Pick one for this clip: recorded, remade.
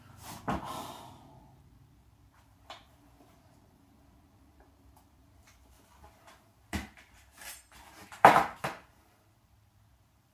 remade